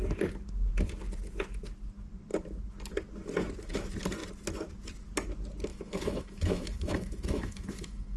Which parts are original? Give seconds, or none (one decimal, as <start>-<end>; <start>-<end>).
0.0-5.7